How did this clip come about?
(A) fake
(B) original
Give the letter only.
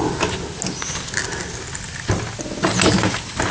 B